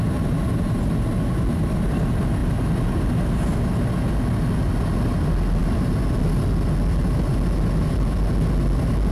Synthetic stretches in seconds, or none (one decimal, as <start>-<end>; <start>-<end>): none